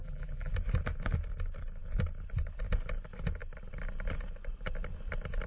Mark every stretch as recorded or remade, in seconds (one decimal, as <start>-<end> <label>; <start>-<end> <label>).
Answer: 0.0-0.5 remade; 0.5-5.5 recorded